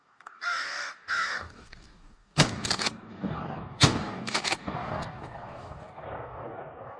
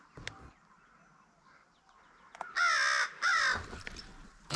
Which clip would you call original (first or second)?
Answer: second